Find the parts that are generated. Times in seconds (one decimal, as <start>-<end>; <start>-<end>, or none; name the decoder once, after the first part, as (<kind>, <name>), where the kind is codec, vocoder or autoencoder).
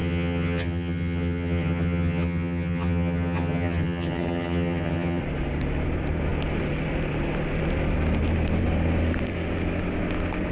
0.0-5.2 (vocoder, HiFi-GAN)